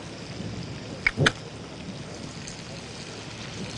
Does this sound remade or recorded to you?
recorded